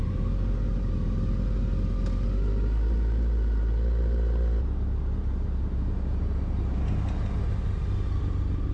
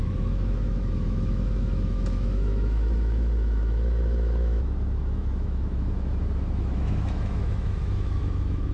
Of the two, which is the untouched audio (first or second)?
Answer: first